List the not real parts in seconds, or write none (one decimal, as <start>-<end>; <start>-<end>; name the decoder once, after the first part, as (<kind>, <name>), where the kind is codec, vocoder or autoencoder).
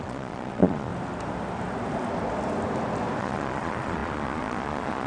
0.0-0.9 (vocoder, Vocos); 3.2-5.1